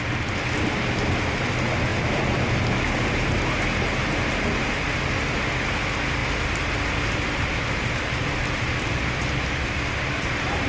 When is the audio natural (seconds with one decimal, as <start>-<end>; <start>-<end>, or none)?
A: 0.0-10.7